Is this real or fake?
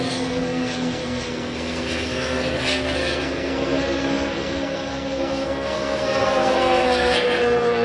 fake